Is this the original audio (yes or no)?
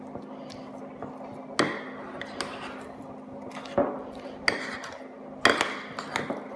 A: yes